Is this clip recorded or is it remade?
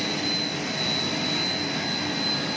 recorded